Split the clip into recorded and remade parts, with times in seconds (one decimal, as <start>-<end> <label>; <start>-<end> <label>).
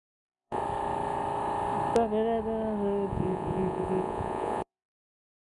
0.0-0.6 remade; 0.6-3.1 recorded; 3.1-5.6 remade